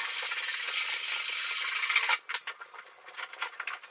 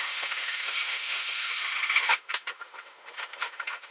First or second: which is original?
first